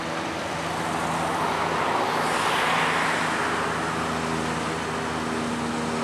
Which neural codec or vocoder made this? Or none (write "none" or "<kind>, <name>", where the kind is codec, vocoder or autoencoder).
none